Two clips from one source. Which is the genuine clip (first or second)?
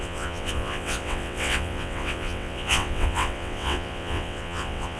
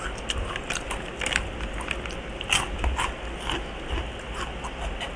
second